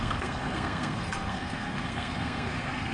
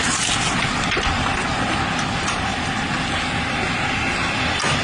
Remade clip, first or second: first